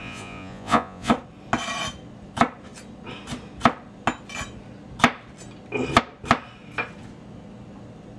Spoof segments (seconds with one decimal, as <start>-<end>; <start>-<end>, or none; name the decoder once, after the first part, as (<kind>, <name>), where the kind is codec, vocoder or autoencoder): 0.0-1.1 (vocoder, Vocos)